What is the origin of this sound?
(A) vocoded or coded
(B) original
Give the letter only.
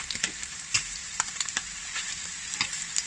A